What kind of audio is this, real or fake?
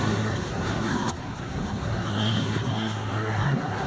fake